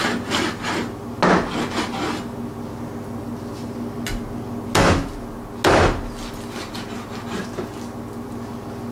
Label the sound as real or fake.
real